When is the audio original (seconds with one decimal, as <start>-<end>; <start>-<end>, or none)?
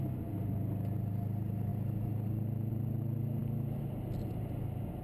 0.0-5.0